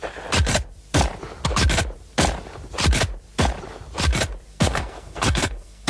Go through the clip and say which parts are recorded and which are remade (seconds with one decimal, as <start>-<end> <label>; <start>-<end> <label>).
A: 0.0-4.5 recorded; 4.5-5.9 remade